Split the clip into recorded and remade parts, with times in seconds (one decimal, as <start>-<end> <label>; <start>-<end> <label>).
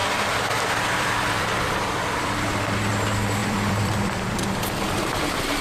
0.0-2.9 remade; 2.9-3.4 recorded; 3.4-4.4 remade; 4.4-5.6 recorded